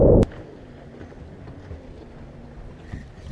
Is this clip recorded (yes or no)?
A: yes